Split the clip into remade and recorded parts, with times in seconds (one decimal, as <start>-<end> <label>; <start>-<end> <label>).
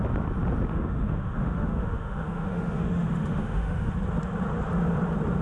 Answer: 0.0-0.7 recorded; 0.7-3.9 remade; 3.9-5.4 recorded